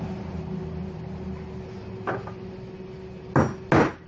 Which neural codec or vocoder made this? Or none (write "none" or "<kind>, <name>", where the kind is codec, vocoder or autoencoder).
none